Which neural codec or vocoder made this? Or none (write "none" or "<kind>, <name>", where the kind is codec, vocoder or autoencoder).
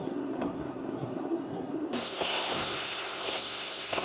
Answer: codec, SNAC